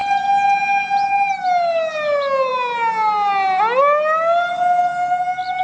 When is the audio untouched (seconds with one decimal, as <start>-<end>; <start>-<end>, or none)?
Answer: 0.0-5.6